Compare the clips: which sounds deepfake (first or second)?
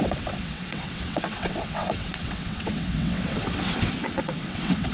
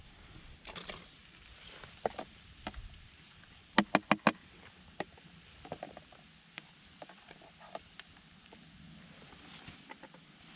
first